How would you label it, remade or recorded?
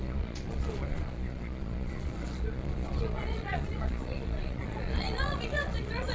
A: remade